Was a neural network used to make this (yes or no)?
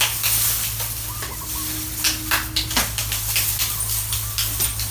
no